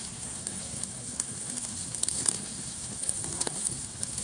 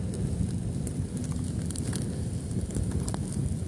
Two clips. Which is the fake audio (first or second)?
first